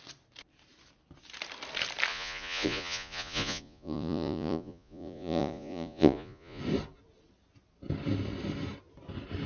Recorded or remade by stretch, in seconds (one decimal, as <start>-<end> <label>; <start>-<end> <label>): 0.0-2.1 recorded; 2.1-6.6 remade; 6.6-9.5 recorded